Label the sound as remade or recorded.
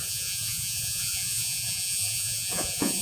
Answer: remade